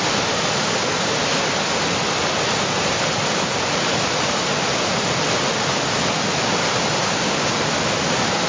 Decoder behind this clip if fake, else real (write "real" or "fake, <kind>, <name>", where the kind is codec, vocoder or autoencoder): real